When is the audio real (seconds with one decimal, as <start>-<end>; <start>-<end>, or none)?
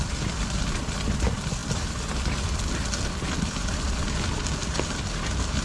0.0-5.6